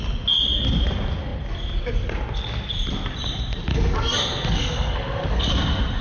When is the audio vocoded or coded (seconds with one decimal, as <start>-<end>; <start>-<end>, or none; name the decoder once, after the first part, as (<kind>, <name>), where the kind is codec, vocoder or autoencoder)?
3.7-5.4 (codec, SNAC)

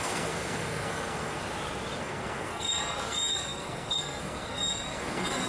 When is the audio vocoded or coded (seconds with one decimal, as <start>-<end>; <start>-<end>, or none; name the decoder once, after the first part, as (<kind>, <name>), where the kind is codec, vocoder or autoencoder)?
0.0-1.4 (codec, SNAC); 2.0-5.5

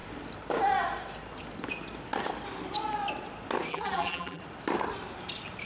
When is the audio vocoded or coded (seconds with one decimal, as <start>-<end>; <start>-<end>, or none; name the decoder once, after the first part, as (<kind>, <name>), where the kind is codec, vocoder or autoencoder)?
3.7-4.4 (vocoder, BigVGAN v2)

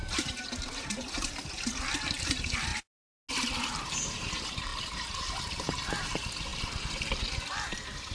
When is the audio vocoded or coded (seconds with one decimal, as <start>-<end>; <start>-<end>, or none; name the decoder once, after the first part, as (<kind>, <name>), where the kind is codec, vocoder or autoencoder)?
0.0-2.7 (vocoder, BigVGAN v2); 3.3-8.1